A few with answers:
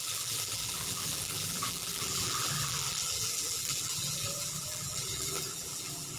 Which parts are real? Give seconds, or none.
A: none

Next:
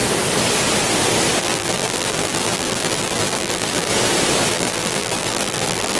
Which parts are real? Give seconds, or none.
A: 0.0-1.4; 3.9-4.5

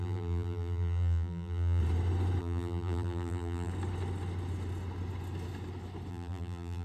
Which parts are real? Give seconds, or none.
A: 1.8-2.4; 3.7-6.1

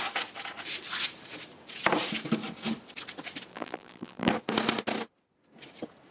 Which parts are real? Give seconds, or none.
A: 0.0-3.5; 4.3-6.1

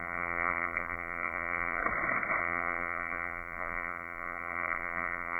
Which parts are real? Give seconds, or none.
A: 1.8-2.4

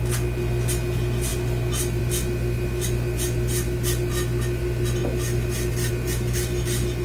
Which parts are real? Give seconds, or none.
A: 0.0-7.0

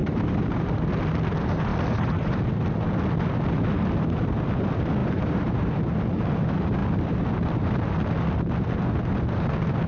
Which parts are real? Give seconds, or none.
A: 0.7-5.0; 5.8-9.9

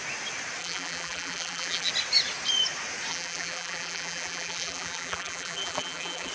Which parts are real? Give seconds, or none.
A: 0.0-0.6; 1.9-3.1